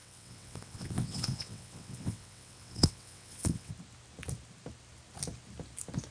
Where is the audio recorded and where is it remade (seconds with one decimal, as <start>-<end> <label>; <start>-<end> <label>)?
0.0-3.7 remade; 3.7-6.1 recorded